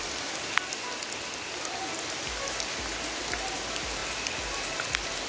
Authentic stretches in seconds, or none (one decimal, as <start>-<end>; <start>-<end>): 0.0-5.3

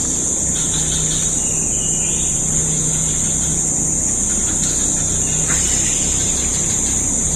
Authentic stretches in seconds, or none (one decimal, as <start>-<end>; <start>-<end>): 0.0-2.6; 3.1-7.4

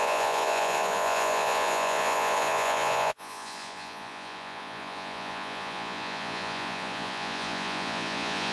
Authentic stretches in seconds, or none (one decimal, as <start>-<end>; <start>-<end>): none

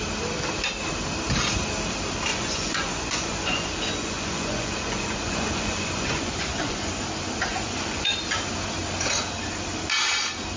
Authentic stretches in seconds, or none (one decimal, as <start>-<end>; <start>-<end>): 0.0-2.3; 7.0-7.5; 8.0-10.6

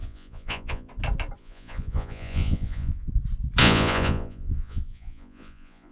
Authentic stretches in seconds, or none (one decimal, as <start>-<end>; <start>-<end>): 0.9-1.4; 3.1-3.6